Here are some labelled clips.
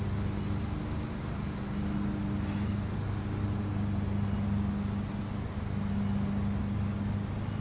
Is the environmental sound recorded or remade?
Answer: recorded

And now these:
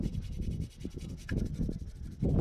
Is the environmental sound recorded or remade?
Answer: recorded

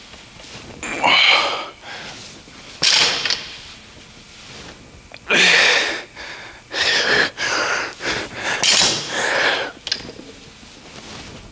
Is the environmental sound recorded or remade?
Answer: recorded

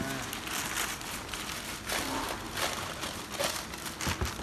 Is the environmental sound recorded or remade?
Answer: recorded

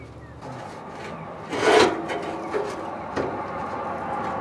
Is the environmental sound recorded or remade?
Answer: recorded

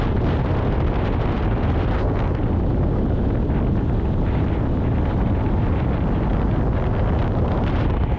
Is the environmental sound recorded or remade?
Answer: recorded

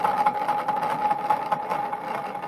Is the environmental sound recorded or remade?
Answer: recorded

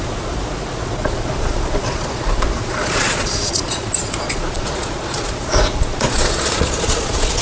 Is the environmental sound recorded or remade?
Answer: remade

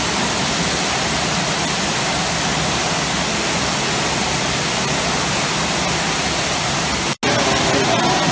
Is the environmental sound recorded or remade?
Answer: recorded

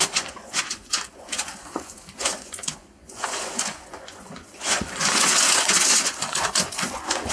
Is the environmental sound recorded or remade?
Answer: remade